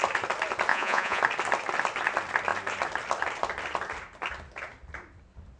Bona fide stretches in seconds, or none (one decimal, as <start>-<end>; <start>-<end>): 0.0-0.7; 1.2-5.6